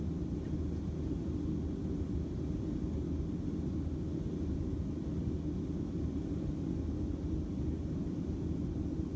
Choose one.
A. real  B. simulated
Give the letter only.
A